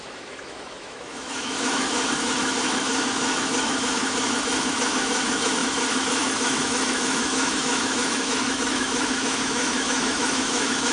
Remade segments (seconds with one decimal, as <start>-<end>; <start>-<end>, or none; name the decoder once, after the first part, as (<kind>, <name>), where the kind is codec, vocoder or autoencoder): 0.0-10.9 (autoencoder, DAC-VAE)